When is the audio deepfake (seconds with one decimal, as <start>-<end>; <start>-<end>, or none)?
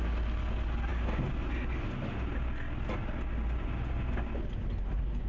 none